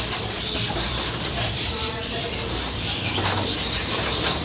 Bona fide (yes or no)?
no